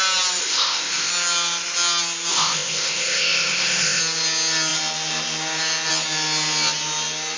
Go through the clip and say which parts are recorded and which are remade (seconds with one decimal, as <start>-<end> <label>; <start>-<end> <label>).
0.0-0.4 recorded; 0.4-1.1 remade; 1.1-2.3 recorded; 2.3-4.0 remade; 4.0-7.4 recorded